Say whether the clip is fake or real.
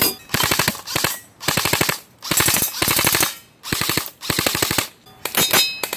real